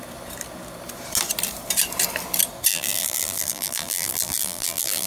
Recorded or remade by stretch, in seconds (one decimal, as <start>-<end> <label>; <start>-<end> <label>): 0.0-2.7 recorded; 2.7-5.1 remade